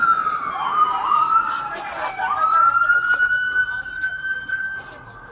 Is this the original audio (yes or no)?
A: yes